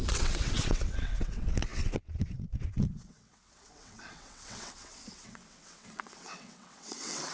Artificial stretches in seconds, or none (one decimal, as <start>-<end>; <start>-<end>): 0.0-7.3